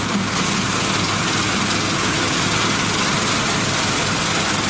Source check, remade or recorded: recorded